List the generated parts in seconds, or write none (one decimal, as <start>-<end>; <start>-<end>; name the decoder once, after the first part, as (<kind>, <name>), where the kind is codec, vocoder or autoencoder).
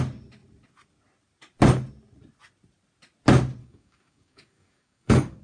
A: 3.6-5.4 (codec, DAC)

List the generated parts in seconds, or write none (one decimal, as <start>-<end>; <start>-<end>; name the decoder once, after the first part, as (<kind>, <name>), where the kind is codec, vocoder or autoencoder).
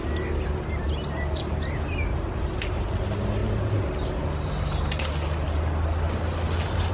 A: none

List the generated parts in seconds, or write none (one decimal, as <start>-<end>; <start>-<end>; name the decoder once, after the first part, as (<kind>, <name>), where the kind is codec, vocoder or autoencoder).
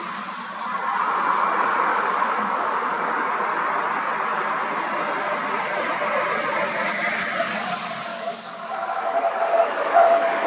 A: 1.9-3.1 (codec, DAC); 8.1-10.5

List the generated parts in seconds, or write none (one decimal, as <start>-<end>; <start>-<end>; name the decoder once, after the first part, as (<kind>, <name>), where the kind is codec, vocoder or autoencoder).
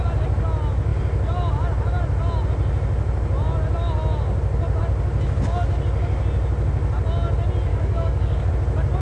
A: 7.7-8.5 (codec, DAC)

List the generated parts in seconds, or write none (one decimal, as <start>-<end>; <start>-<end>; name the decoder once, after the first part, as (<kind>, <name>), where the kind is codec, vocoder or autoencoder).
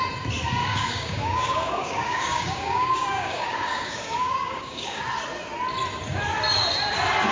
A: 0.6-5.0 (codec, DAC)